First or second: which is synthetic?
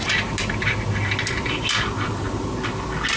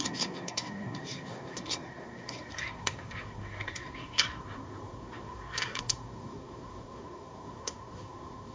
second